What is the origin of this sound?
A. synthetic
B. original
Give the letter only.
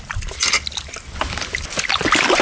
B